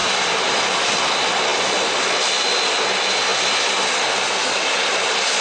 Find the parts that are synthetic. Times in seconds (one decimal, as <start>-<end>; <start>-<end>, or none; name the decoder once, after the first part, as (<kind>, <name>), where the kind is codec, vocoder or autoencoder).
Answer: 0.0-0.8 (vocoder, BigVGAN v2)